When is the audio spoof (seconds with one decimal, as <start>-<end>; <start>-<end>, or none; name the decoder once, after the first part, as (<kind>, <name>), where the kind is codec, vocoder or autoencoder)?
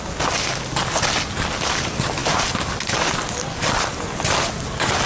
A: none